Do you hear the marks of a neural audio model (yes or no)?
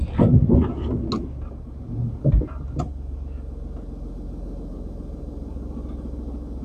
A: no